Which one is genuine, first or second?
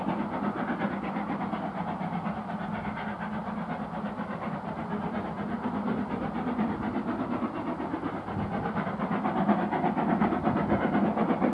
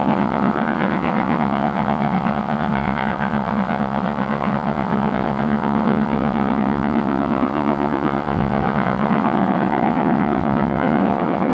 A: first